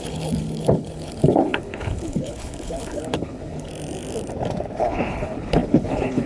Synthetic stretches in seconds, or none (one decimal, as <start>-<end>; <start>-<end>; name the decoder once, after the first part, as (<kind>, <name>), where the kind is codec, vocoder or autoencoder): 0.0-3.7 (codec, HILCodec); 4.8-6.3